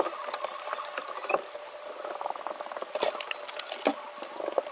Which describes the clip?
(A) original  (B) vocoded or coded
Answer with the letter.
A